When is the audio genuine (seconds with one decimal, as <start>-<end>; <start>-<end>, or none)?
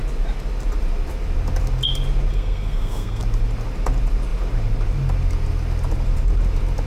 0.0-2.3; 3.2-6.9